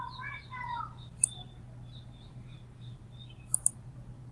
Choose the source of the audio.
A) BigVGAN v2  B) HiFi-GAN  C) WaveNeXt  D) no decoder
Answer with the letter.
D